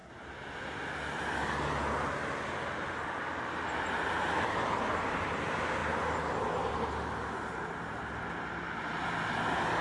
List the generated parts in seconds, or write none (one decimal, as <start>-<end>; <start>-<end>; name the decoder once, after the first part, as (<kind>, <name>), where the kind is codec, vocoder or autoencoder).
none